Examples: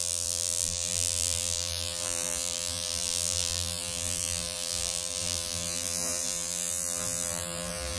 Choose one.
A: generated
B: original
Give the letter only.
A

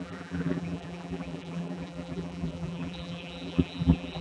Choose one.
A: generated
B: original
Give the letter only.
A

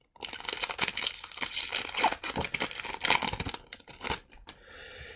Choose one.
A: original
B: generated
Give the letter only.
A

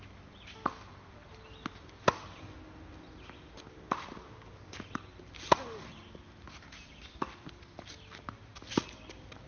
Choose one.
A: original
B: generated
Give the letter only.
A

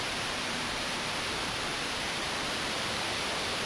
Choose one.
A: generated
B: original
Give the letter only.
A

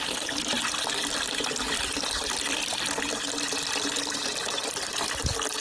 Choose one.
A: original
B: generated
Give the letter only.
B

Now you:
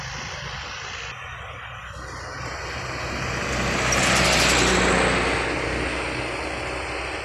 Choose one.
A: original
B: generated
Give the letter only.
A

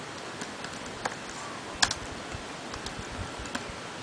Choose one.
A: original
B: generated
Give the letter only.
A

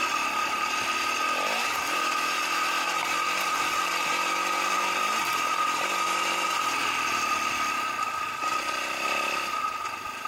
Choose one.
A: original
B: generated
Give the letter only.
B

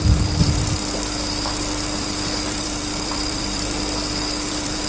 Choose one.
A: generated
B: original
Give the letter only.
A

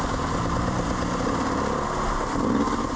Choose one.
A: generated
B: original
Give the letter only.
B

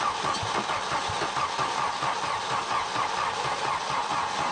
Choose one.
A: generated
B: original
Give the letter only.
A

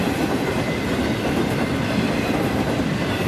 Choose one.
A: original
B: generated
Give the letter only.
B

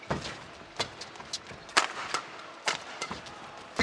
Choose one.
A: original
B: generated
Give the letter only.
A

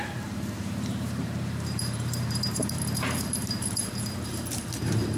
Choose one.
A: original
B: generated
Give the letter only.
B